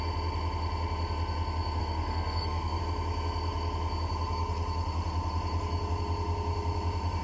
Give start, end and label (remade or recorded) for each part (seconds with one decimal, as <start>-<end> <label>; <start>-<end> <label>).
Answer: 0.0-1.8 recorded; 1.8-2.8 remade; 2.8-7.2 recorded